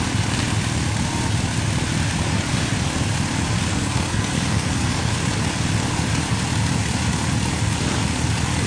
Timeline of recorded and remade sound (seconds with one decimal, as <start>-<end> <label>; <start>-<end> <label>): 0.0-3.7 recorded; 3.7-5.1 remade; 5.1-8.7 recorded